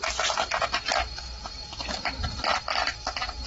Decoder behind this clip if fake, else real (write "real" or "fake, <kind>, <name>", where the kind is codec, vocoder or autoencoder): real